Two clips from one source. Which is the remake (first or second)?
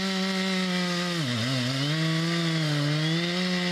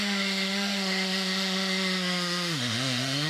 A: second